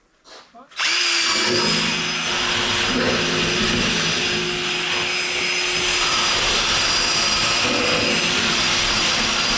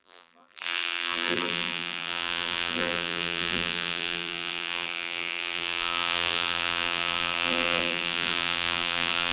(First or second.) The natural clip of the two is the first